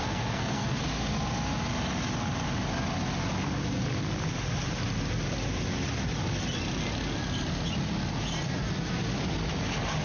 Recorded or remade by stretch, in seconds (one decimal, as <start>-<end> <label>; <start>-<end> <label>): 0.0-0.8 remade; 0.8-10.0 recorded